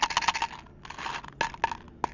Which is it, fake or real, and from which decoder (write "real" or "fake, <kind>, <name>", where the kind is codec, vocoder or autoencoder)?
real